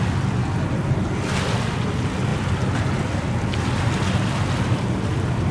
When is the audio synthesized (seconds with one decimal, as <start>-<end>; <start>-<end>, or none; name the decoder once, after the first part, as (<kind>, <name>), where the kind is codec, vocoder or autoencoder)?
none